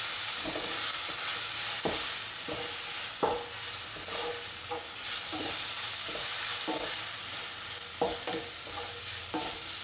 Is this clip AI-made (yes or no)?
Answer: no